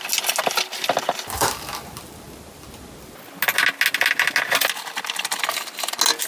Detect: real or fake real